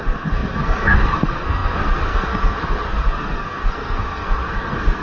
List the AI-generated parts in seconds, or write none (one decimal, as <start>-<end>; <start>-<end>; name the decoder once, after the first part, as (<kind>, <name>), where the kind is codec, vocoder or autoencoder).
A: 0.0-5.0 (codec, SNAC)